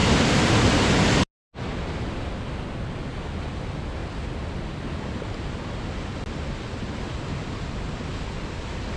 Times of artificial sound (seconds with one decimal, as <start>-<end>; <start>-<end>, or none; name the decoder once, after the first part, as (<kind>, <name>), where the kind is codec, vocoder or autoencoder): none